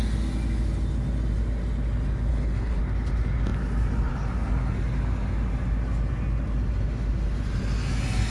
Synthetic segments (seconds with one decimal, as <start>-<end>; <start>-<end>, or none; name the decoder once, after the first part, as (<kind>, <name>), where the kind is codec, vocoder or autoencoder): 2.3-2.8 (codec, HILCodec)